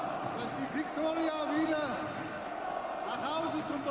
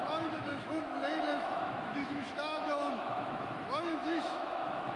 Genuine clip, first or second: first